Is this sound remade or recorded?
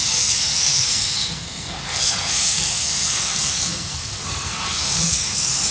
remade